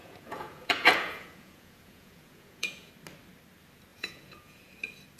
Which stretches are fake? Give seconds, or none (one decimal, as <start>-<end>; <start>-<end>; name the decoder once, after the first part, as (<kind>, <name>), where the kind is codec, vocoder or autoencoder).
0.0-2.9 (vocoder, Vocos); 3.9-4.7